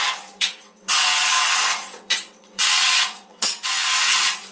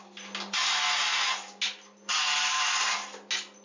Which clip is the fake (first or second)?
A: first